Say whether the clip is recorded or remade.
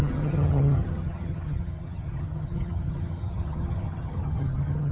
remade